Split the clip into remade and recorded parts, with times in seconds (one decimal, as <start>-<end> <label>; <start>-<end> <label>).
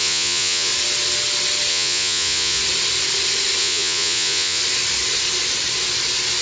0.0-0.7 remade; 0.7-1.7 recorded; 1.7-2.6 remade; 2.6-3.6 recorded; 3.6-4.6 remade; 4.6-6.4 recorded